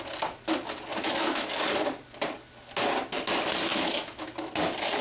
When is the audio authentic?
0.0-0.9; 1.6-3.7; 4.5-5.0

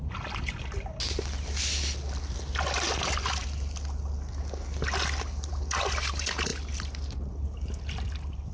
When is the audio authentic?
0.0-8.5

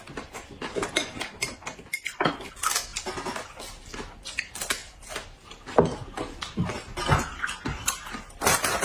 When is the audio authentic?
0.0-4.8; 7.3-8.8

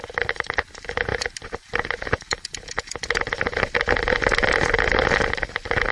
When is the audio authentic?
0.0-5.9